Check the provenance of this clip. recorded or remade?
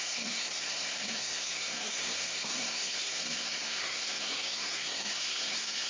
remade